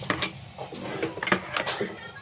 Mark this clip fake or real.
real